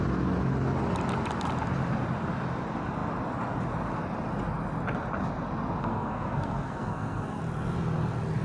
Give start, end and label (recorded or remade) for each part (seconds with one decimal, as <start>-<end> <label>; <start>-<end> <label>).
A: 0.0-5.8 recorded; 5.8-7.4 remade; 7.4-8.4 recorded

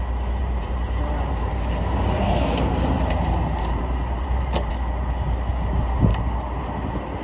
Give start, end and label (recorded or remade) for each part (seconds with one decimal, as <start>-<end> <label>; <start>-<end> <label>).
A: 0.0-0.4 recorded; 0.4-4.7 remade; 4.7-7.2 recorded

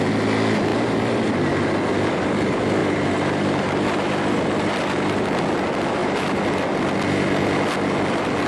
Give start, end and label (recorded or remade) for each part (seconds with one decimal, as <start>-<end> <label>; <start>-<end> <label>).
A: 0.0-0.7 recorded; 0.7-1.3 remade; 1.3-2.8 recorded; 2.8-5.4 remade; 5.4-6.0 recorded; 6.0-6.9 remade; 6.9-8.5 recorded